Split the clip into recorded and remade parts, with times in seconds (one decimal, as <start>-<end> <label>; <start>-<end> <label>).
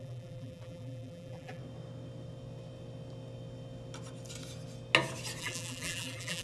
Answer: 0.0-1.6 remade; 1.6-5.4 recorded; 5.4-6.4 remade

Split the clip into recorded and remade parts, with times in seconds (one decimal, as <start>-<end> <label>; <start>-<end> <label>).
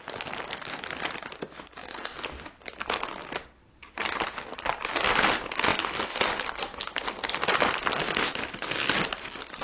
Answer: 0.0-3.8 recorded; 3.8-4.4 remade; 4.4-9.6 recorded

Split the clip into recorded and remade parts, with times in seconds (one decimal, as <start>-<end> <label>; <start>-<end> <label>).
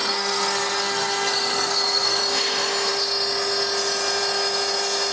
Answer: 0.0-2.2 remade; 2.2-5.1 recorded